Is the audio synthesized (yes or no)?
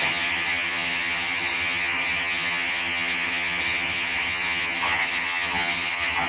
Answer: yes